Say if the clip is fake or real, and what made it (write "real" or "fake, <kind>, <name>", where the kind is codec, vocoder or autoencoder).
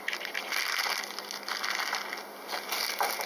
real